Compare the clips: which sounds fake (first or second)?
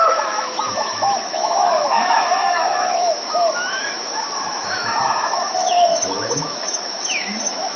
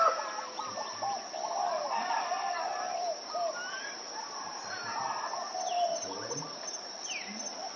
first